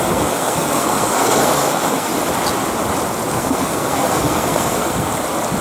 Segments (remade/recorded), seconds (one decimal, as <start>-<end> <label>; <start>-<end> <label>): 0.0-2.1 remade; 2.1-3.3 recorded; 3.3-5.1 remade; 5.1-5.6 recorded